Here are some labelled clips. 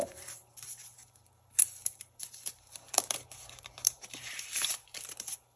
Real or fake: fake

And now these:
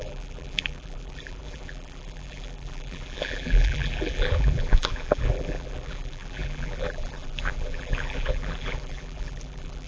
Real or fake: fake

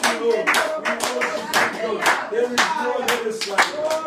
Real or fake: fake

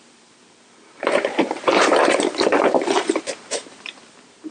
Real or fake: fake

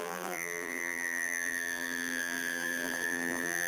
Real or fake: fake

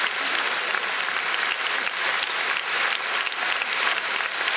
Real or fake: real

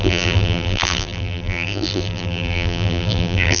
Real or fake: fake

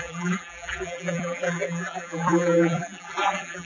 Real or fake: fake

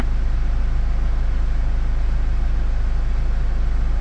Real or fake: real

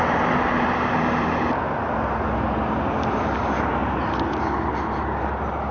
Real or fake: real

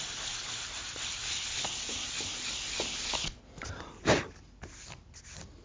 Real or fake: real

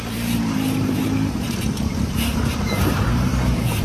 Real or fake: fake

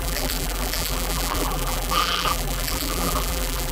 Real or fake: fake